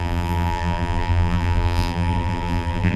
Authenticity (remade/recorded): remade